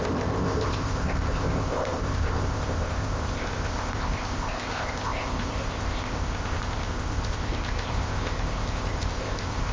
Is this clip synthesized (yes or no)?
yes